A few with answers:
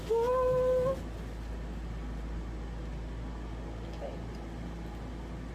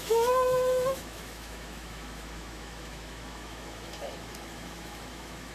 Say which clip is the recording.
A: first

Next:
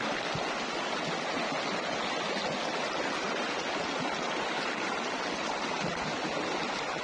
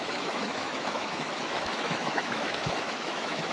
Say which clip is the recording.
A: first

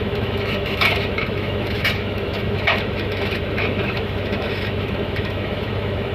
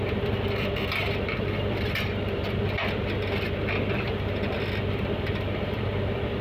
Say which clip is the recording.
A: second